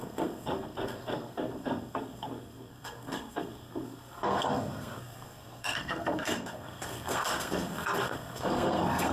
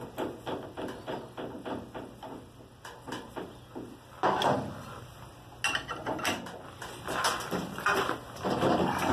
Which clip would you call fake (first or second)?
first